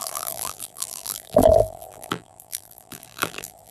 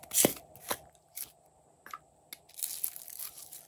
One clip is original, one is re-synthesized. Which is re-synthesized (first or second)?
first